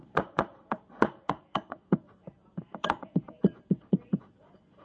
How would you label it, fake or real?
fake